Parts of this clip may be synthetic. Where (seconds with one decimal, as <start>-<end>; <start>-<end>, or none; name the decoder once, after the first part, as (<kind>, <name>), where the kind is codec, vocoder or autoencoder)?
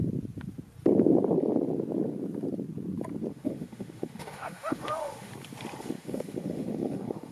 3.3-5.3 (autoencoder, DAC-VAE); 5.8-7.3